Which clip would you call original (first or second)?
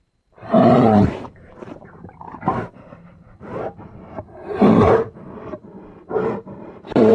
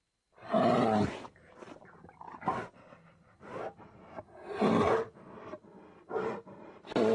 second